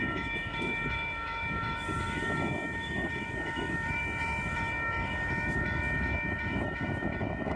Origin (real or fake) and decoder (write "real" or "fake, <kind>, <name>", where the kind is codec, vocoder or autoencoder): fake, autoencoder, DAC-VAE